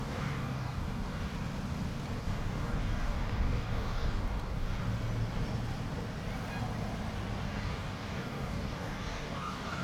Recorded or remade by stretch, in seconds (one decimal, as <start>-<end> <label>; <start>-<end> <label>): 0.0-1.3 remade; 1.3-2.2 recorded; 2.2-4.8 remade; 4.8-7.4 recorded; 7.4-9.8 remade